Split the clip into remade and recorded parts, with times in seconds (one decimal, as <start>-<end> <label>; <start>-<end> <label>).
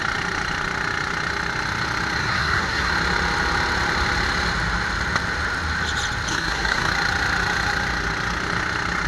0.0-2.2 recorded; 2.2-2.9 remade; 2.9-6.3 recorded; 6.3-6.9 remade; 6.9-9.1 recorded